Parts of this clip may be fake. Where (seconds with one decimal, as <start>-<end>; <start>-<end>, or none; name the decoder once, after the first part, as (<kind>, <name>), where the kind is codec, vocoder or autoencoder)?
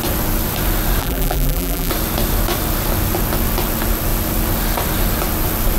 1.0-1.9 (vocoder, BigVGAN v2)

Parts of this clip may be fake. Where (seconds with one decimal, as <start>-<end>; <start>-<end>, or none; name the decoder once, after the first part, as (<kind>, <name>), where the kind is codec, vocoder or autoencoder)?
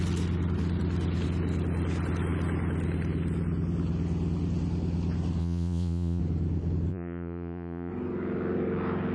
5.4-6.2 (vocoder, Vocos); 6.9-7.9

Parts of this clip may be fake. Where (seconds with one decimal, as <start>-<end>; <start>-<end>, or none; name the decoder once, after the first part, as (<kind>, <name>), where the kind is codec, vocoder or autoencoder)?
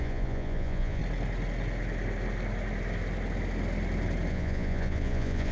0.0-1.0 (vocoder, Vocos); 4.3-5.5